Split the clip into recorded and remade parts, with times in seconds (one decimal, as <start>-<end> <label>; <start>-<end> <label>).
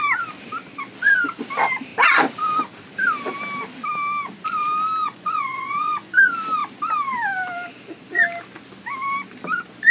0.0-5.0 recorded; 5.0-6.1 remade; 6.1-9.9 recorded